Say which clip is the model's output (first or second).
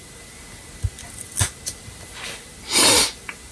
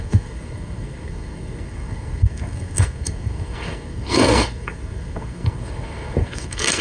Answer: second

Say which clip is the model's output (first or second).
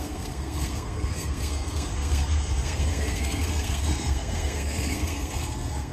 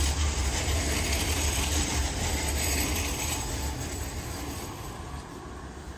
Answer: first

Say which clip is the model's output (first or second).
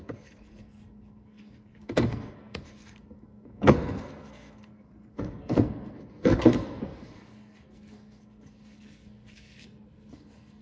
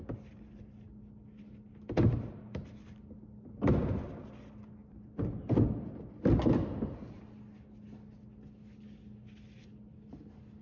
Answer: first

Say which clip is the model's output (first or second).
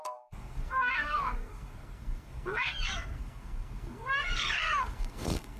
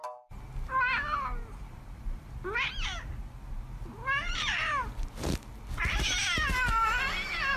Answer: first